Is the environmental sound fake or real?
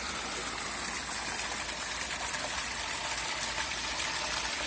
real